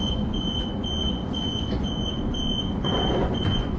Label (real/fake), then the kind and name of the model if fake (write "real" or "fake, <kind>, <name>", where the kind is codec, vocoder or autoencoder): fake, vocoder, Vocos